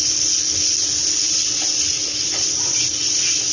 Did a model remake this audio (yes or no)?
no